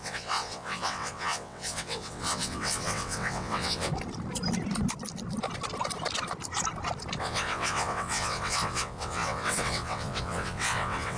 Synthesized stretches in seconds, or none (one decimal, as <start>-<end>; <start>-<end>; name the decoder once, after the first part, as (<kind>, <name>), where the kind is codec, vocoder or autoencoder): 0.0-3.9 (vocoder, WaveNeXt); 7.2-11.2